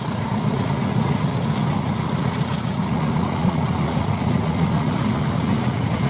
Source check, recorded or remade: remade